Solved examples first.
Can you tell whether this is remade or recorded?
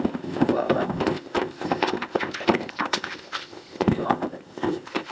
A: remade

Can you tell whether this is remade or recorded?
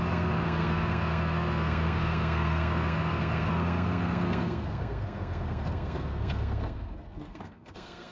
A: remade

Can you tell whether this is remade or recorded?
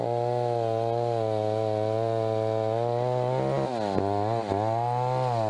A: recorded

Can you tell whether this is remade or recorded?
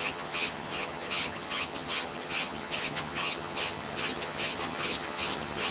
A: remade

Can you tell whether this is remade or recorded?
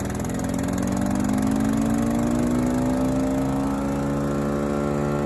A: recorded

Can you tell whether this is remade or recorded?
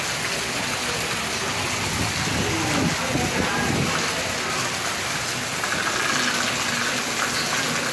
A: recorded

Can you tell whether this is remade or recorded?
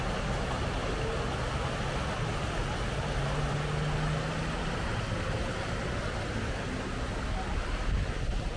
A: recorded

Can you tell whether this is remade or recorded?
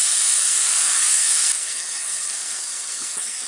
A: remade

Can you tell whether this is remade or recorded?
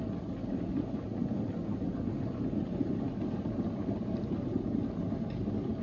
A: recorded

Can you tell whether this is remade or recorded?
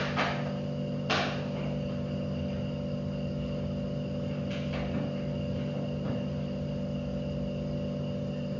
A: recorded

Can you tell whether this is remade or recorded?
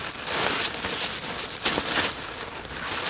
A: recorded